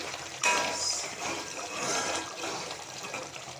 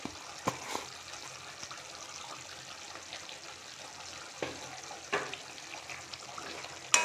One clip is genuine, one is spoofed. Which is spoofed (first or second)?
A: first